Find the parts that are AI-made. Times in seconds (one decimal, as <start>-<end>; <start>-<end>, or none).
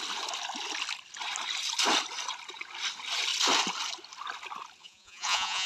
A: 4.8-5.7